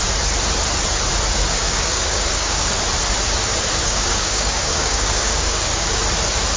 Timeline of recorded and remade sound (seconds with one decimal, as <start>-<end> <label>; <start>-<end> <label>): 0.0-1.4 recorded; 1.4-2.7 remade; 2.7-3.8 recorded; 3.8-6.0 remade; 6.0-6.6 recorded